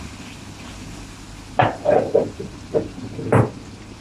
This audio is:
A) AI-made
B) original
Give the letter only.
B